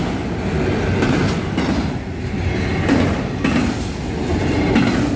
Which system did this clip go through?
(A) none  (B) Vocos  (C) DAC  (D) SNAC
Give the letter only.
A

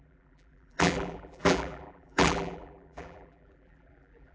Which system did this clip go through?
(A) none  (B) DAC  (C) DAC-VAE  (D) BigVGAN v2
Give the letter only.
D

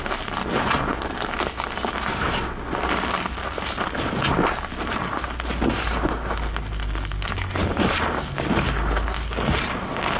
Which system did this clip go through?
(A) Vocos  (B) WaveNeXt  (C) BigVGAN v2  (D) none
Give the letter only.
D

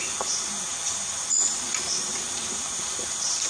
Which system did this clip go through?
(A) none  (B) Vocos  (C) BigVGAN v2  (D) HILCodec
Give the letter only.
C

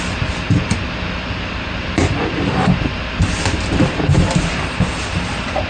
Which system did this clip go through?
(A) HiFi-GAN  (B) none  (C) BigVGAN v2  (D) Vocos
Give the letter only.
B